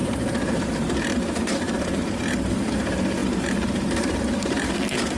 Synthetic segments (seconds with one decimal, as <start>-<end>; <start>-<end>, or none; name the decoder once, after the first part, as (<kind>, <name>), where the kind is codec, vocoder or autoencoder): 0.0-5.2 (vocoder, BigVGAN v2)